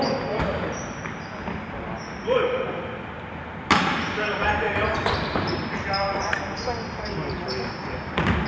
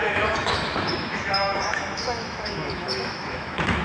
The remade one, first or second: second